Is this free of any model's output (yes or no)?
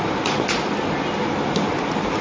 yes